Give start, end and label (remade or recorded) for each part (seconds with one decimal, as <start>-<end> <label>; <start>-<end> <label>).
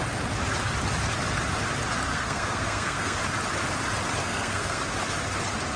0.0-2.1 recorded; 2.1-3.2 remade; 3.2-4.2 recorded; 4.2-4.8 remade; 4.8-5.8 recorded